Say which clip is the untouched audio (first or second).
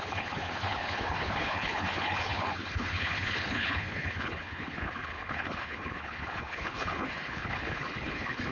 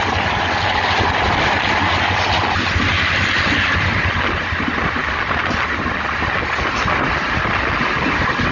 second